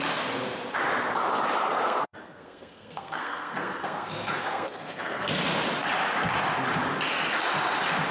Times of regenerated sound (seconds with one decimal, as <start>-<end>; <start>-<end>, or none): 1.7-5.3